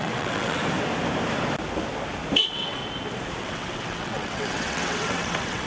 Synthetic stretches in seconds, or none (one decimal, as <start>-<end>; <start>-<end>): 0.0-0.6; 2.4-2.8; 3.4-5.7